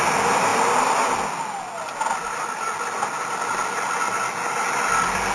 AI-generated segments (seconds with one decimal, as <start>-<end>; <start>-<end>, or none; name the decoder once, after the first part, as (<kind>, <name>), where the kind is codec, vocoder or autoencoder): none